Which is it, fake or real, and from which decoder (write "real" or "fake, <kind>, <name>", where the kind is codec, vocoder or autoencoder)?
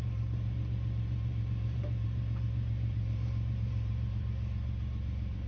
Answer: fake, vocoder, BigVGAN v2